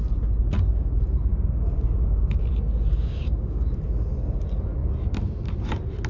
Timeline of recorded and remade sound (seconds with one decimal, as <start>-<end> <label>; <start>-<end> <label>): 0.0-2.9 recorded; 2.9-3.8 remade; 3.8-6.1 recorded